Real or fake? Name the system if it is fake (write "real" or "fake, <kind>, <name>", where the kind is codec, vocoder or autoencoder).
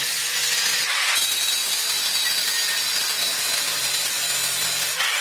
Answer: real